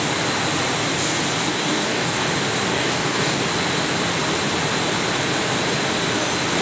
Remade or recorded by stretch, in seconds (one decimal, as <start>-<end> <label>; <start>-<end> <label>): 0.0-1.5 recorded; 1.5-2.3 remade; 2.3-2.7 recorded; 2.7-3.4 remade; 3.4-6.6 recorded